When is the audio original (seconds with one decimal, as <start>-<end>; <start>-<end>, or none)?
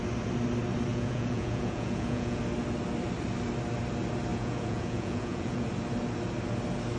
0.0-0.9; 2.4-4.3; 5.7-7.0